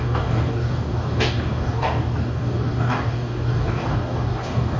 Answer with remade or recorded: remade